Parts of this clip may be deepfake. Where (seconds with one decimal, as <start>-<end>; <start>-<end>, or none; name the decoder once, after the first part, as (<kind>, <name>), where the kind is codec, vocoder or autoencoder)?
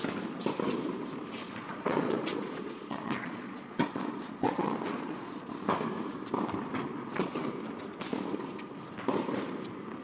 1.4-5.5 (vocoder, Vocos); 6.9-7.5